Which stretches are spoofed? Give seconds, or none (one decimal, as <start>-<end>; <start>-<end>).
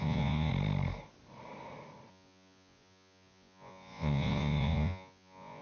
0.0-0.5; 2.1-5.6